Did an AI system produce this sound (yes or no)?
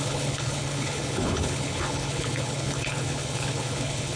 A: yes